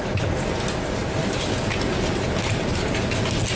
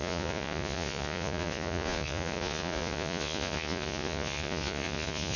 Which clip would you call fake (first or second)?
second